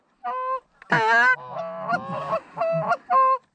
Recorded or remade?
recorded